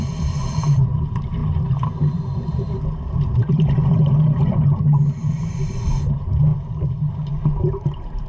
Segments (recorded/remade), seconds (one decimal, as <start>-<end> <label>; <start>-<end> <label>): 0.0-6.5 remade; 6.5-7.1 recorded; 7.1-8.3 remade